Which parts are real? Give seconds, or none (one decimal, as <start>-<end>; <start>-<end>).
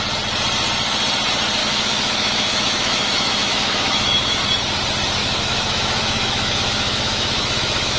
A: 0.0-1.6; 4.4-5.2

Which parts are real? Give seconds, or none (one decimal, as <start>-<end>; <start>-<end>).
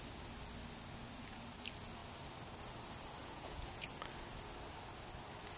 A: 0.0-3.2; 3.9-5.6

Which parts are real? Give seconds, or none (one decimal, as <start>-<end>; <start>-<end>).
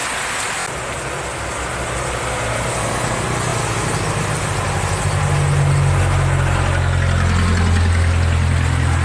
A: 0.0-9.0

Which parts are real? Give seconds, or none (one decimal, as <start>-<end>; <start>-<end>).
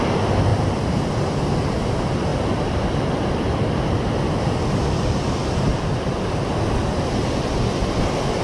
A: 0.0-0.5; 1.1-2.3; 3.0-6.8; 7.7-8.4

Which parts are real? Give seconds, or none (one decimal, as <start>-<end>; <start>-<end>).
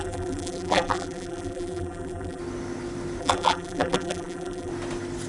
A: 2.4-3.2; 4.7-5.3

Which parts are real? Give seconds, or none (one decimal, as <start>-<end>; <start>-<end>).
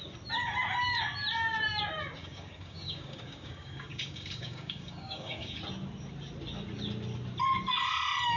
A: 0.0-2.2; 5.6-8.4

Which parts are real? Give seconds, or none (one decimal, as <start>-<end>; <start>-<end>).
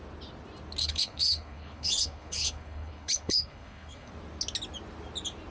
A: 0.0-0.8; 4.1-5.5